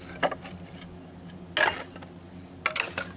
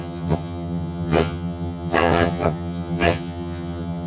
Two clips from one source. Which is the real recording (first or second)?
first